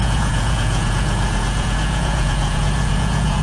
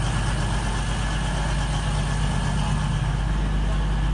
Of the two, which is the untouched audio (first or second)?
second